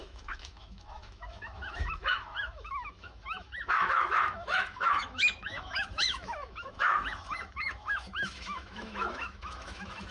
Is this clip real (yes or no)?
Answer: no